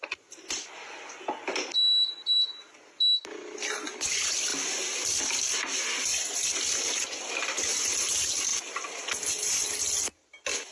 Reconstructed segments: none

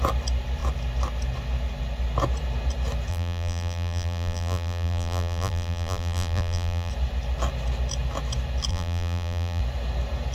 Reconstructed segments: 3.1-6.9 (vocoder, BigVGAN v2); 8.7-9.6

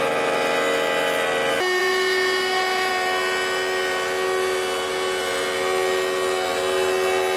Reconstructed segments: 1.8-2.9 (vocoder, Vocos)